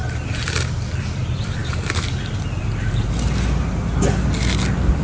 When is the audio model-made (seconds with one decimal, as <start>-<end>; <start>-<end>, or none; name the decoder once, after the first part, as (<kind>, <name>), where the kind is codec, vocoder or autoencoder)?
0.0-5.0 (vocoder, BigVGAN v2)